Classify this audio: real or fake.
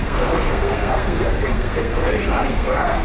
fake